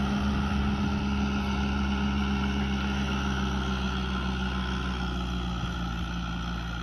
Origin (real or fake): real